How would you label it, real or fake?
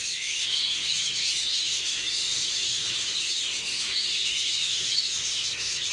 fake